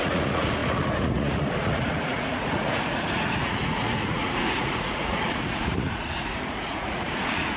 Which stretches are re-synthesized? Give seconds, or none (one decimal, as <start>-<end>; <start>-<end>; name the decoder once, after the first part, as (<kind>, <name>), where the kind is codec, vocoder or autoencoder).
0.0-7.6 (vocoder, Vocos)